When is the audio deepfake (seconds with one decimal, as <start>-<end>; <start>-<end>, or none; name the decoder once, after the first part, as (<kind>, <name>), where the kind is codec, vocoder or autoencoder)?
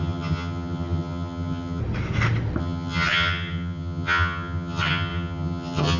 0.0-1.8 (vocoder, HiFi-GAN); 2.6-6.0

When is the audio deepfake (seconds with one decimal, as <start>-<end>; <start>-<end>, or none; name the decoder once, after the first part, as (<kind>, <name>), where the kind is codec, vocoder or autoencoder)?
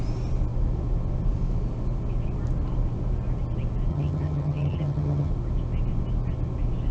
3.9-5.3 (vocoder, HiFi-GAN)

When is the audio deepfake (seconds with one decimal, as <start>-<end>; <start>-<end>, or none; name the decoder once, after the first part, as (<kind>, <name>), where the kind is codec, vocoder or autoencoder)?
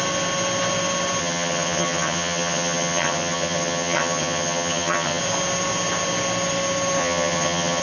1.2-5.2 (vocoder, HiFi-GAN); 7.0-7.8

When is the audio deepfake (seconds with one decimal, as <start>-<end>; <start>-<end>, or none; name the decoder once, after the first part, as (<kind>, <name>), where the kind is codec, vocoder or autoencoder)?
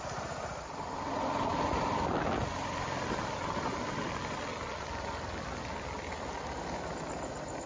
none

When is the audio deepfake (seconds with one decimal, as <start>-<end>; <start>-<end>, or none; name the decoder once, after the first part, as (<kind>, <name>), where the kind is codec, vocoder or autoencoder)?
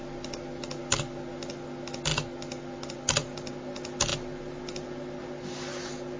none